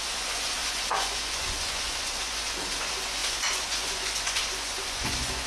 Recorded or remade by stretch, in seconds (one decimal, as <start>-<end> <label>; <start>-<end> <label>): 0.0-5.5 remade